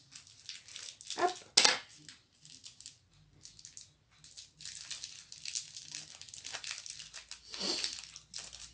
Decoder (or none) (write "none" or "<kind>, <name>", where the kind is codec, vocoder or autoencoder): none